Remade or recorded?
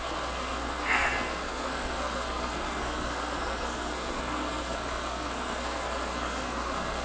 remade